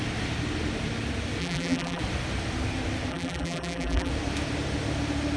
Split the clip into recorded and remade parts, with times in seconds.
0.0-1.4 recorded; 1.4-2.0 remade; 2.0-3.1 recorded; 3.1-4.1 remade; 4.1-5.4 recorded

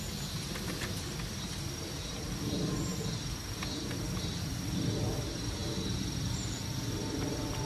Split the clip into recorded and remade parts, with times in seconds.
0.0-7.7 recorded